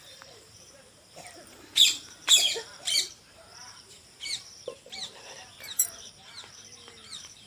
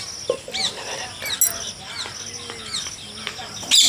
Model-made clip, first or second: first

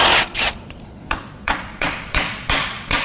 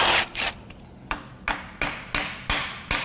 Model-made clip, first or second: first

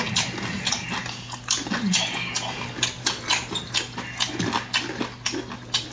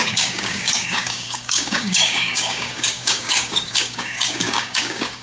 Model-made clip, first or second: second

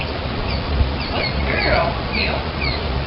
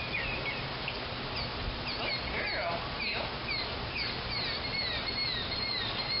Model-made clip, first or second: first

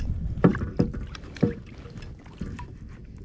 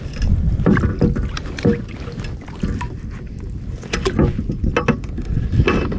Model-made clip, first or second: first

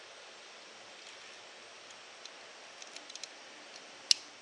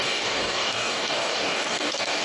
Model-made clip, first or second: second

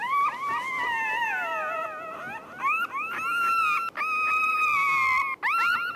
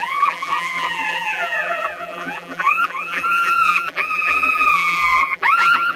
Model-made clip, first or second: second